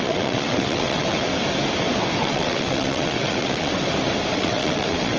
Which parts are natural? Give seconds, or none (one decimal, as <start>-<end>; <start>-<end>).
1.3-2.2; 3.7-4.3